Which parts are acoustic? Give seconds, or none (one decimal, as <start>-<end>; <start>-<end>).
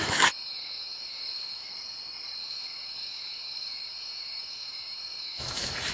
1.7-2.4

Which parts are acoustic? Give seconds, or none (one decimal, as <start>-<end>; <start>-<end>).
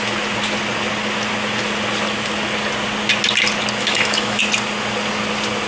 0.0-3.8; 4.4-5.7